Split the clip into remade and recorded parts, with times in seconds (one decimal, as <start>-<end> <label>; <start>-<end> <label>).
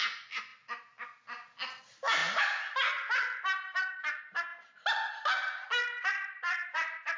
0.0-7.2 recorded